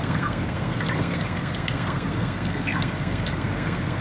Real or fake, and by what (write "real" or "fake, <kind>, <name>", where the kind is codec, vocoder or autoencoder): fake, codec, SNAC